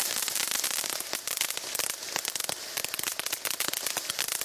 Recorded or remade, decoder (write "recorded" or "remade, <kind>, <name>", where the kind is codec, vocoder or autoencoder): recorded